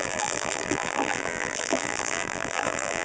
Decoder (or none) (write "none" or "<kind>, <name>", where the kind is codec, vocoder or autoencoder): vocoder, BigVGAN v2